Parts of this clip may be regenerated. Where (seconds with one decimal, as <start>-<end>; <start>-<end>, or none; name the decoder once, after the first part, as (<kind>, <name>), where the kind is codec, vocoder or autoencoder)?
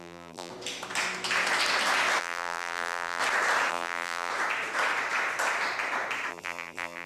0.0-0.5 (vocoder, BigVGAN v2); 2.2-3.2; 3.7-4.3; 6.3-7.1